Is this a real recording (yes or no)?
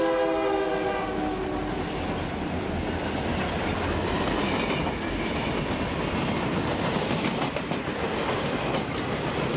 yes